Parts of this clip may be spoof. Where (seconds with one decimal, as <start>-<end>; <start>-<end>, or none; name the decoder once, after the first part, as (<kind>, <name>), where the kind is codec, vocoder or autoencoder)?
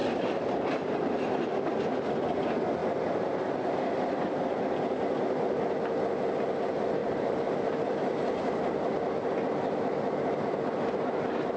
0.0-1.4 (vocoder, BigVGAN v2); 7.0-8.6